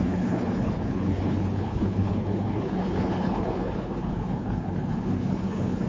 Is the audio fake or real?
fake